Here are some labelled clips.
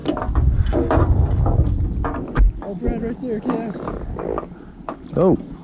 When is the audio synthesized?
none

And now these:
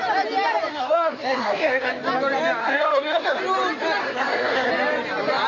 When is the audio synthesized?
0.7-1.9 (codec, SNAC); 2.6-3.4; 4.0-4.7

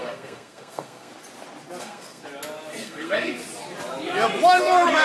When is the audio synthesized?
0.0-1.1 (codec, SNAC); 1.8-2.2; 2.8-3.4; 4.6-5.0

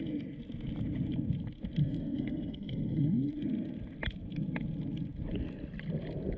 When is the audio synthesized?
1.8-3.3 (codec, SNAC)

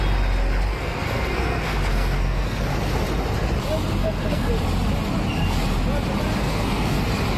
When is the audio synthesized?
0.7-2.6 (codec, SNAC); 4.0-4.5; 6.4-7.0